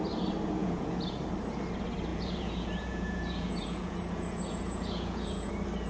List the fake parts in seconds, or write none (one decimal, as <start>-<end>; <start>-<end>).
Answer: 0.6-1.2; 2.1-5.5